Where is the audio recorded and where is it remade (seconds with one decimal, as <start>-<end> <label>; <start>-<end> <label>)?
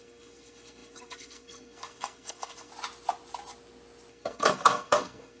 0.0-2.7 remade; 2.7-4.1 recorded; 4.1-5.4 remade